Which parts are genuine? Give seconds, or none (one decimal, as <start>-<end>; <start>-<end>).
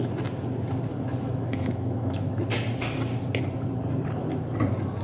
0.0-1.1; 2.4-5.0